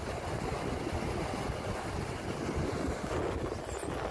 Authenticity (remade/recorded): recorded